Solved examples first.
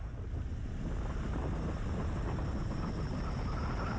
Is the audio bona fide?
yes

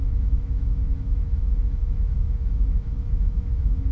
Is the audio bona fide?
no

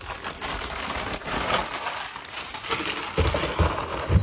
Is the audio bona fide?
yes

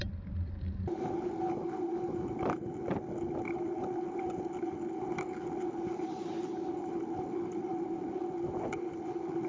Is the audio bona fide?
yes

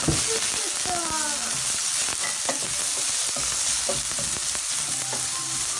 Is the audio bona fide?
yes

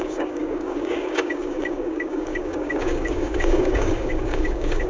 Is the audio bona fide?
no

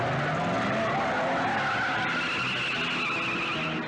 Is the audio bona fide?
yes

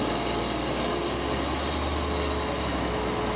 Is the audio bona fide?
yes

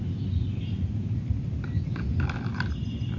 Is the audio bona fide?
yes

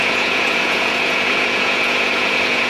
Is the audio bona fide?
no